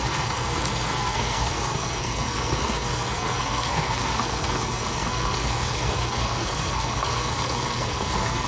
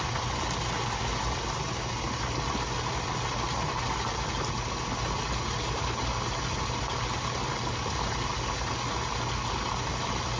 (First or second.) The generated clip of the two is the first